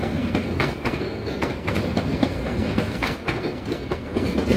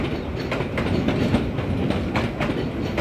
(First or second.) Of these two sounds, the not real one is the first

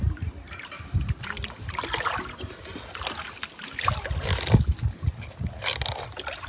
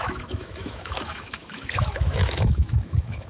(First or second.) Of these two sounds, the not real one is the second